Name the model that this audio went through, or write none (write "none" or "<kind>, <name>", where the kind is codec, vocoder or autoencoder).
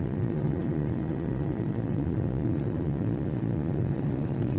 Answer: vocoder, Vocos